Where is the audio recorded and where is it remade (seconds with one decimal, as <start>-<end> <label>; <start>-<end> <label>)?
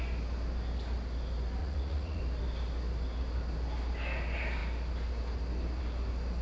0.0-1.6 recorded; 1.6-2.2 remade; 2.2-6.4 recorded